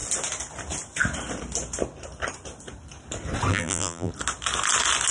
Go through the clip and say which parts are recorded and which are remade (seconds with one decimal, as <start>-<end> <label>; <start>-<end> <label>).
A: 0.0-3.5 recorded; 3.5-4.1 remade; 4.1-5.1 recorded

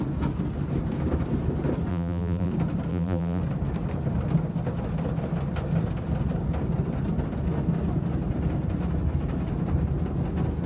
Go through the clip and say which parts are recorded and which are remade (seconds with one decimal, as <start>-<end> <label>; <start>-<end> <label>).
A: 0.0-1.9 recorded; 1.9-2.5 remade; 2.5-2.9 recorded; 2.9-3.4 remade; 3.4-10.7 recorded

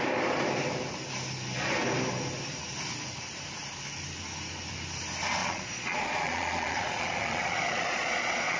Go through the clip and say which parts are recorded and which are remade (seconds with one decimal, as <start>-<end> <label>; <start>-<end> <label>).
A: 0.0-5.4 recorded; 5.4-8.6 remade

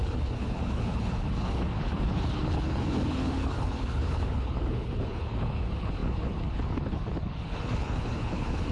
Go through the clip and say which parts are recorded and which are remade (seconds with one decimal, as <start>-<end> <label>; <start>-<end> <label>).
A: 0.0-8.7 remade

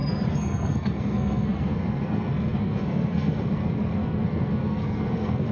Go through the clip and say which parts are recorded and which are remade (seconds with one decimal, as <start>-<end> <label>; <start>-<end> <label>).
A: 0.0-5.5 remade

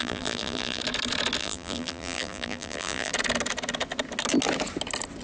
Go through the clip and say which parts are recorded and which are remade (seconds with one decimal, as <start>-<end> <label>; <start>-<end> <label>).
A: 0.0-0.8 remade; 0.8-1.4 recorded; 1.4-3.1 remade; 3.1-5.2 recorded